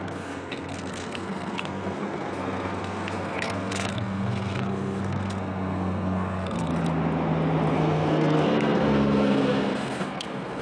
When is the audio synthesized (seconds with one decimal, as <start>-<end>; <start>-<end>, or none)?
0.0-6.7; 7.7-10.6